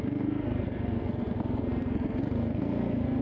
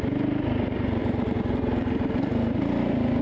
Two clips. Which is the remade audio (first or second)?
first